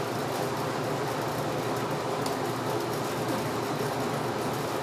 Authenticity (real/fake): real